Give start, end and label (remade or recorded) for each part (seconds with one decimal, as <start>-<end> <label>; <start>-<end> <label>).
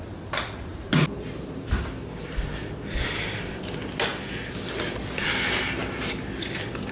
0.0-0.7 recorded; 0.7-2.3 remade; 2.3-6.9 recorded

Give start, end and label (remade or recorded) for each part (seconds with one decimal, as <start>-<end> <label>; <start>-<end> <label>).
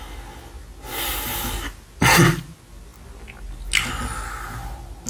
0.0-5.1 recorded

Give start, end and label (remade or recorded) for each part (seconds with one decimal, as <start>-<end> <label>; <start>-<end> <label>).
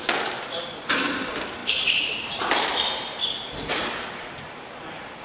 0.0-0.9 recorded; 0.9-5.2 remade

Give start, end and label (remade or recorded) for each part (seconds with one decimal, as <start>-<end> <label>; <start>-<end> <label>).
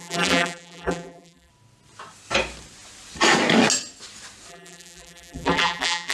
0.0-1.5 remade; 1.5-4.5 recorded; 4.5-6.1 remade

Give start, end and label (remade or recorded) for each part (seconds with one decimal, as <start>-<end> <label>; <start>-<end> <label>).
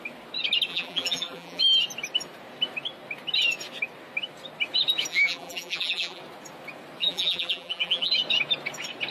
0.0-0.7 recorded; 0.7-1.6 remade; 1.6-5.1 recorded; 5.1-6.2 remade; 6.2-7.0 recorded; 7.0-8.1 remade; 8.1-9.1 recorded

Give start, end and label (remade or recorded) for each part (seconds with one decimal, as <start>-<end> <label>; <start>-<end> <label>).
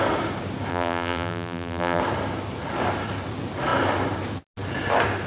0.0-0.7 recorded; 0.7-2.0 remade; 2.0-5.3 recorded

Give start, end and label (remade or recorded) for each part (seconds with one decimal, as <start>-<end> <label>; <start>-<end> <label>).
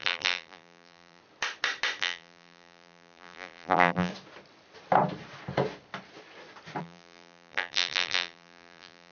0.0-1.2 remade; 1.2-2.0 recorded; 2.0-4.1 remade; 4.1-6.8 recorded; 6.8-9.1 remade